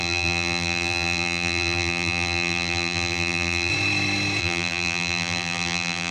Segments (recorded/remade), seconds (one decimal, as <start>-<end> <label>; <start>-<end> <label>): 0.0-3.7 remade; 3.7-4.4 recorded; 4.4-6.1 remade